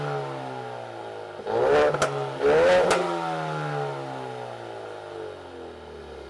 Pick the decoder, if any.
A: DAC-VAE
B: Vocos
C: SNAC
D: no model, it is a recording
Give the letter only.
D